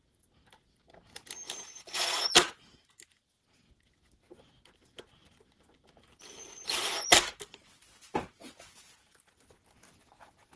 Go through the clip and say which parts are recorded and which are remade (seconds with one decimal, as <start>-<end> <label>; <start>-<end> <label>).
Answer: 0.0-5.2 recorded; 5.2-6.8 remade; 6.8-10.6 recorded